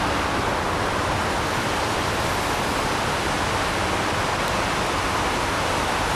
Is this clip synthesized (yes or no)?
no